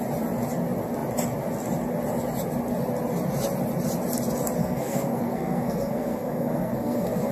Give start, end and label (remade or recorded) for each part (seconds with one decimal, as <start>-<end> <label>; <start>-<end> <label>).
0.0-4.6 recorded; 4.6-7.3 remade